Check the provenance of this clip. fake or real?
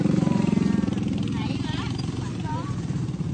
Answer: fake